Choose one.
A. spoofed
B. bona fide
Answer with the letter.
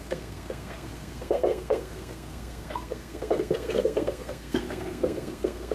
A